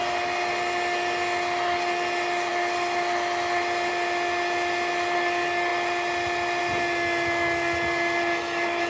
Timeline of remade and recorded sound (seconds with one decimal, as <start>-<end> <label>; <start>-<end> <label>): 0.0-8.9 recorded